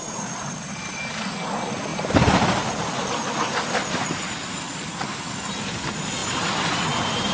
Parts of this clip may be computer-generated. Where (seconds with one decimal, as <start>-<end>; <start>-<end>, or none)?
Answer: 1.9-5.3; 6.2-6.8